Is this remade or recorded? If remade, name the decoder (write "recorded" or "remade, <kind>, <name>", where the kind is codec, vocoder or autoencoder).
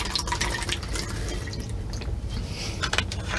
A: recorded